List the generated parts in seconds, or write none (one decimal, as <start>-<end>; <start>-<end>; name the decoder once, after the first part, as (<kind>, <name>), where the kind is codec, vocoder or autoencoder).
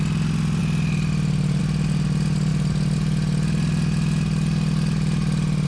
none